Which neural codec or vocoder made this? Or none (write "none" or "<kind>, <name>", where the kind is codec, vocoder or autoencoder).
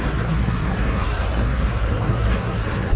codec, SNAC